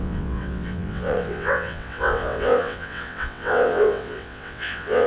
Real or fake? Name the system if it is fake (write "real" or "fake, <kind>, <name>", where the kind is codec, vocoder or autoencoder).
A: fake, vocoder, WaveNeXt